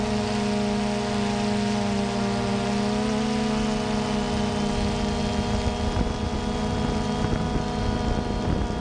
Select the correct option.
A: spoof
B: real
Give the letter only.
B